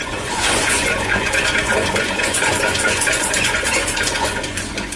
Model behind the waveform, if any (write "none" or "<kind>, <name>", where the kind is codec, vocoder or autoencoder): vocoder, Vocos